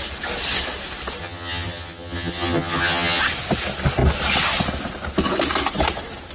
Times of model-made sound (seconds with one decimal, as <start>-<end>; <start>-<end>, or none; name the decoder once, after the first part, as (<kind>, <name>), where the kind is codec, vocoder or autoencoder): 1.2-3.2 (vocoder, HiFi-GAN)